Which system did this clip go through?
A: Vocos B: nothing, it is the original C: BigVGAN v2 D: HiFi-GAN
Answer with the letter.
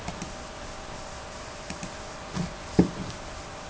B